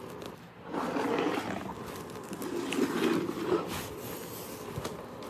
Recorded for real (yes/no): yes